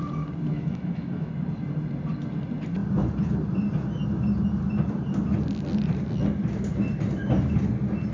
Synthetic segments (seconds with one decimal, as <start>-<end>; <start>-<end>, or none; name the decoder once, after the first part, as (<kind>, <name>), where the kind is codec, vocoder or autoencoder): 0.5-1.3 (autoencoder, DAC-VAE)